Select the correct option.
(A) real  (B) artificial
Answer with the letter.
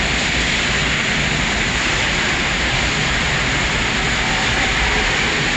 A